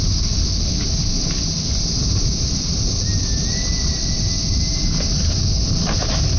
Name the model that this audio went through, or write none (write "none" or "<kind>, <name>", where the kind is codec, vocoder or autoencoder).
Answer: none